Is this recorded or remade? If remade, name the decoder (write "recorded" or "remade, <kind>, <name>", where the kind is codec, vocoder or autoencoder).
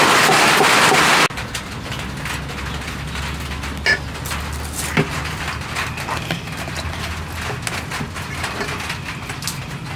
recorded